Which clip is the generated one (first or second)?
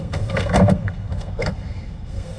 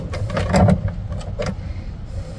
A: first